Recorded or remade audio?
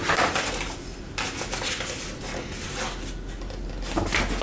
recorded